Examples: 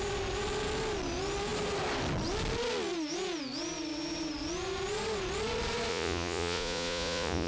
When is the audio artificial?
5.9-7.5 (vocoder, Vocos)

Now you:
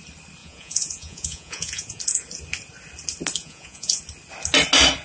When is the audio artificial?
0.4-2.0 (vocoder, Vocos); 3.4-4.0

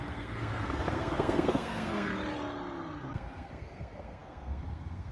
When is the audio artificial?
0.0-2.1 (codec, SNAC); 3.1-5.1

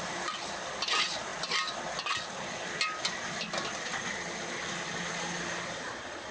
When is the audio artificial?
none

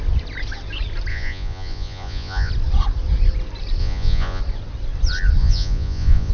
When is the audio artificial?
1.1-2.5 (vocoder, Vocos); 3.8-4.4; 5.4-6.3

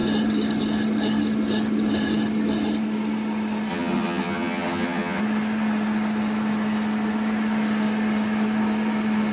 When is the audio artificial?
3.7-5.2 (vocoder, HiFi-GAN)